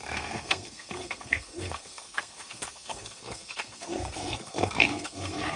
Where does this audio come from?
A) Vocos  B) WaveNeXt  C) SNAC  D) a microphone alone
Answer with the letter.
C